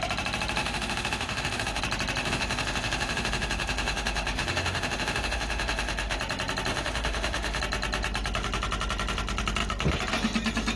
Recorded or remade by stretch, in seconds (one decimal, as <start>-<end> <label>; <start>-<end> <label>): 0.0-0.6 recorded; 0.6-1.8 remade; 1.8-2.2 recorded; 2.2-6.2 remade; 6.2-6.7 recorded; 6.7-7.6 remade; 7.6-10.8 recorded